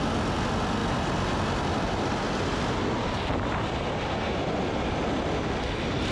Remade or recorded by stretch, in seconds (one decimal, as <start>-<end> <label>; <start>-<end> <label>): 0.0-0.8 recorded; 0.8-1.7 remade; 1.7-6.1 recorded